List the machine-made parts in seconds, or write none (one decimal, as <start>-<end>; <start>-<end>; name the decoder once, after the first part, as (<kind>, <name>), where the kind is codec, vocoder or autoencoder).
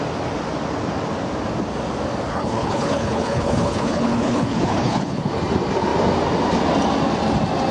2.3-5.3 (codec, HILCodec)